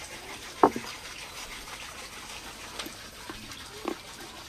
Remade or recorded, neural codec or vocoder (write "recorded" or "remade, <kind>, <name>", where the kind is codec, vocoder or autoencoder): recorded